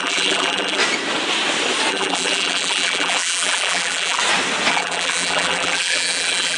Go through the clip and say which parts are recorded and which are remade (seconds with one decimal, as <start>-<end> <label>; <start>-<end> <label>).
0.0-0.8 remade; 0.8-1.9 recorded; 1.9-4.2 remade; 4.2-4.7 recorded; 4.7-6.6 remade